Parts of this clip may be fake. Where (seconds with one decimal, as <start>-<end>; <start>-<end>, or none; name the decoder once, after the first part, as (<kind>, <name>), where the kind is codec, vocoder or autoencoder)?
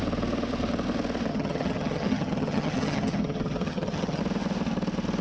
1.3-4.2 (vocoder, HiFi-GAN)